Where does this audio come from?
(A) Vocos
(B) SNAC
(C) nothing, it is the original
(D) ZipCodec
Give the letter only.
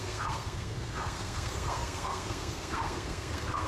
B